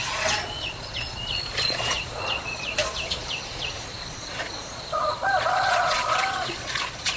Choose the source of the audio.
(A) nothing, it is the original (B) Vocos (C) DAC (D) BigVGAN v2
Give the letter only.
B